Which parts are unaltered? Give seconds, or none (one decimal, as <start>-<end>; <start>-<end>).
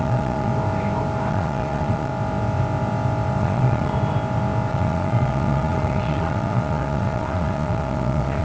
0.5-1.3; 2.1-3.4; 3.9-4.7